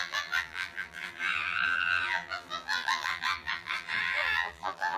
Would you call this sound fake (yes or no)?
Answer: yes